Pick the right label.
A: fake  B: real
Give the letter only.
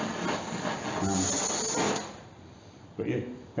B